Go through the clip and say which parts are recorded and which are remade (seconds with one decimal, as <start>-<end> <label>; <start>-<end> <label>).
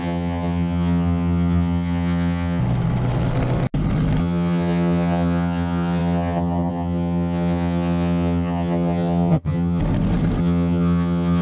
0.0-2.6 remade; 2.6-4.2 recorded; 4.2-9.8 remade; 9.8-10.4 recorded; 10.4-11.4 remade